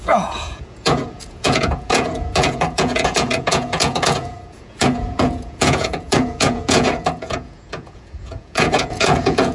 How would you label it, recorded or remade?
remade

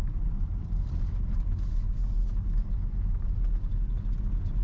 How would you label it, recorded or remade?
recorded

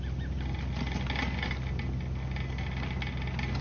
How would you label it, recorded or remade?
recorded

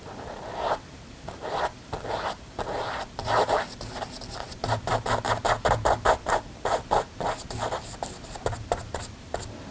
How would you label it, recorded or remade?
recorded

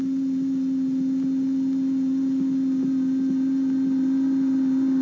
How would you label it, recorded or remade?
recorded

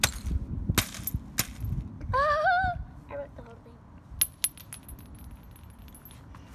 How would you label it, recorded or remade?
recorded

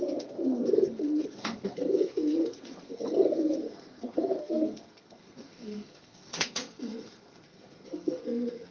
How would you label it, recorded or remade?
remade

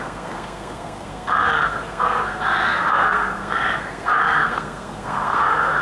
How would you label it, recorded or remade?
remade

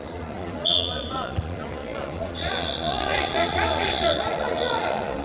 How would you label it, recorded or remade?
remade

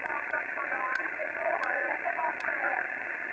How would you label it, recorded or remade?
remade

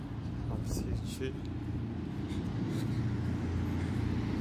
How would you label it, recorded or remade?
recorded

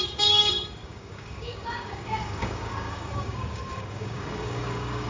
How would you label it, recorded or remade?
remade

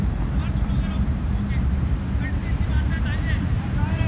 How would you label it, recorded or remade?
remade